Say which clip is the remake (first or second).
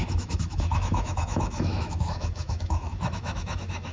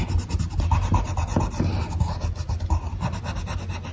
first